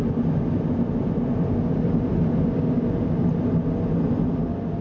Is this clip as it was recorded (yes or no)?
yes